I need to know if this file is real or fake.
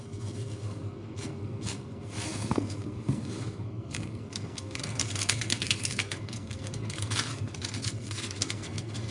fake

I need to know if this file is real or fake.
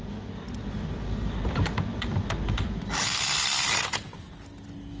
real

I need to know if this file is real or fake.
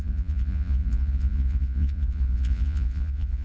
fake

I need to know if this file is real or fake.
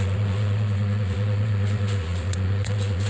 fake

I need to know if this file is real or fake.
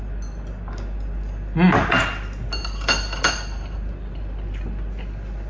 real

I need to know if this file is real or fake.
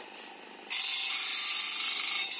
real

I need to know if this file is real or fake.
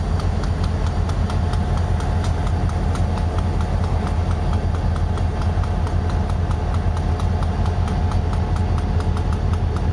real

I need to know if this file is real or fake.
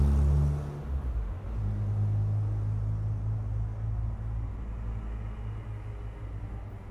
real